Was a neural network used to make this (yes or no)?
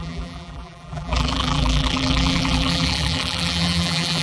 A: yes